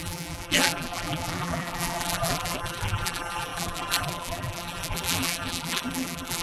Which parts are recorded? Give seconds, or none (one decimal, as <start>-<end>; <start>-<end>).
none